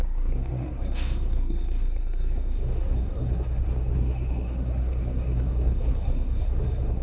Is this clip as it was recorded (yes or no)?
no